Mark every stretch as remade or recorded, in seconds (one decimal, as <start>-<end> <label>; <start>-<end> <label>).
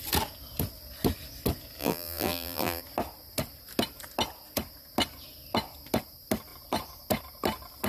0.0-1.8 recorded; 1.8-2.8 remade; 2.8-7.9 recorded